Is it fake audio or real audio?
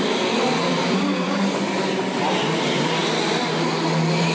real